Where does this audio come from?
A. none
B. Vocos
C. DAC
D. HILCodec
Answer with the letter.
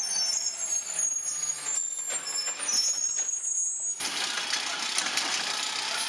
A